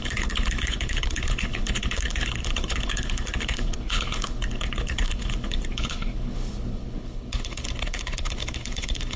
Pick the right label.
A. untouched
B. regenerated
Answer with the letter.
B